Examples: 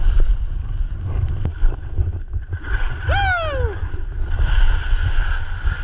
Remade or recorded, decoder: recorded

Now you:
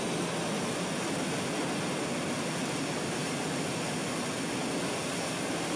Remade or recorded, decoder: recorded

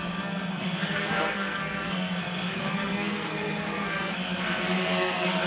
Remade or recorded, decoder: remade, codec, SNAC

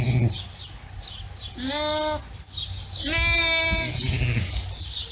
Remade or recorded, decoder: recorded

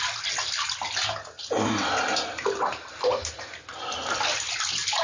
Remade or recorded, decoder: recorded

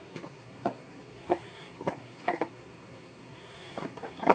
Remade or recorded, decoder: remade, codec, SNAC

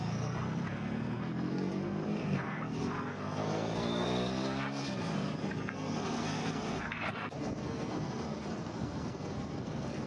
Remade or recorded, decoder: remade, codec, SNAC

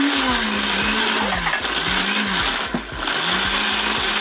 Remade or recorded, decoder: recorded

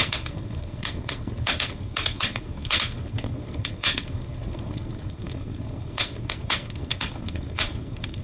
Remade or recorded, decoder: remade, codec, SNAC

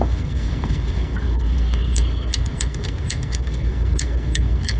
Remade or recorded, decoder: remade, codec, SNAC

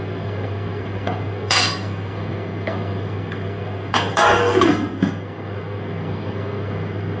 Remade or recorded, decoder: remade, codec, SNAC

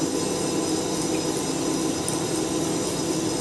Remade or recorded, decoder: recorded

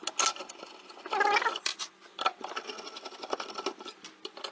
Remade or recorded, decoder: recorded